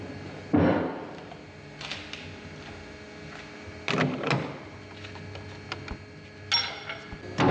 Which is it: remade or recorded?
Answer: recorded